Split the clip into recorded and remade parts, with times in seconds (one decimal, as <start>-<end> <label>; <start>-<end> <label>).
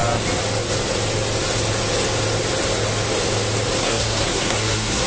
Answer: 0.0-3.8 recorded; 3.8-5.1 remade